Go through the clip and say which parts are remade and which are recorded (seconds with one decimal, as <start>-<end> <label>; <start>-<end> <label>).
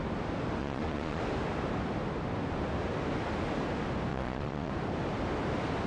0.0-0.6 recorded; 0.6-1.2 remade; 1.2-4.1 recorded; 4.1-4.7 remade; 4.7-5.9 recorded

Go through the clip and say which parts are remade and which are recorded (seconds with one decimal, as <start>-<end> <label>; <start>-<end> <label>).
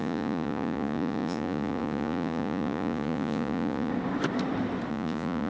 0.0-3.9 remade; 3.9-4.9 recorded; 4.9-5.5 remade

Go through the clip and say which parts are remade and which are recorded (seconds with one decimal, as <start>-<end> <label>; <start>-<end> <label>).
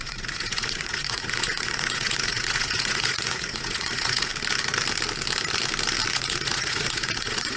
0.0-4.3 remade; 4.3-6.1 recorded; 6.1-7.6 remade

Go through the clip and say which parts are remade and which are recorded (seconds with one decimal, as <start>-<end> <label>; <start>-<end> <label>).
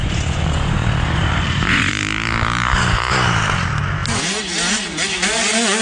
0.0-1.9 remade; 1.9-5.8 recorded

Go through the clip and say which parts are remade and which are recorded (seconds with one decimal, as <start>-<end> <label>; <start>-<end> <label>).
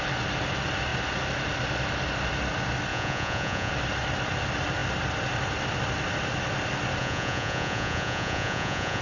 0.0-2.9 recorded; 2.9-3.7 remade; 3.7-7.0 recorded; 7.0-9.0 remade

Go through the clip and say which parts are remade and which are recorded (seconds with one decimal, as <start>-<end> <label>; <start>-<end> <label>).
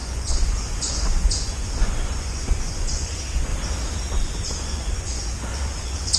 0.0-3.5 remade; 3.5-4.2 recorded; 4.2-6.2 remade